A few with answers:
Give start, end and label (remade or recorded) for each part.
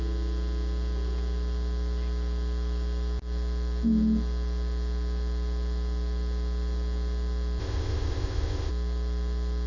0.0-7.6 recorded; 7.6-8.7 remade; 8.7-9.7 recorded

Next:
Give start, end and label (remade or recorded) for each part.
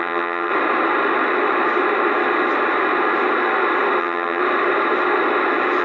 0.0-0.5 remade; 0.5-4.0 recorded; 4.0-4.4 remade; 4.4-5.8 recorded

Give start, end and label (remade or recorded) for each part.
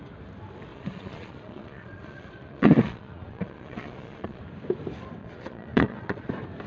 0.0-0.7 recorded; 0.7-4.4 remade; 4.4-5.2 recorded; 5.2-6.3 remade; 6.3-6.7 recorded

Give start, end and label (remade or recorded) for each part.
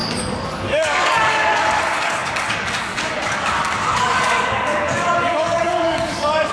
0.0-6.5 remade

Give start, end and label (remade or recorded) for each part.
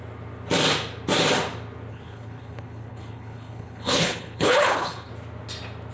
0.0-1.9 recorded; 1.9-5.1 remade; 5.1-5.9 recorded